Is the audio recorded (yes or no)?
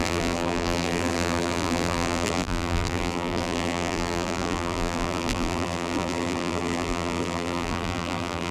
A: no